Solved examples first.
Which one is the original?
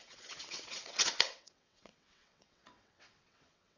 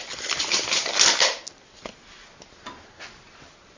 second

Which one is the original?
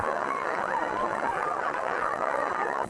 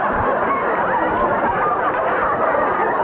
second